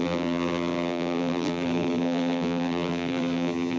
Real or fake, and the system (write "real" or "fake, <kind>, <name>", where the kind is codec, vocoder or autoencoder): fake, vocoder, BigVGAN v2